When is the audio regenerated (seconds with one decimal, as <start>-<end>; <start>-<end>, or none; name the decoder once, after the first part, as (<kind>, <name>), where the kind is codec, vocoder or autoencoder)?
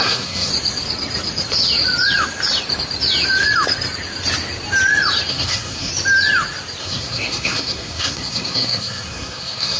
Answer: 0.0-0.5 (codec, SNAC); 5.3-5.9; 6.8-9.8